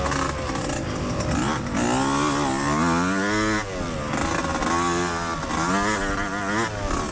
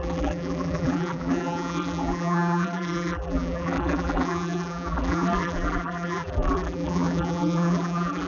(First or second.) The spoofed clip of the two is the second